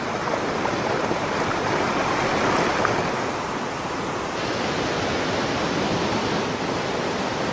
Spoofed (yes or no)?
no